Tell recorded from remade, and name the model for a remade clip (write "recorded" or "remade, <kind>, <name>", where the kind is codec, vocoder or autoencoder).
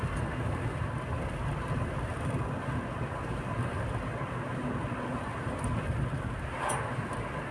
recorded